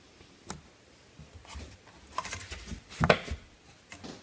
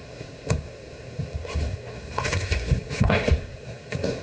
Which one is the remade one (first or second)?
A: second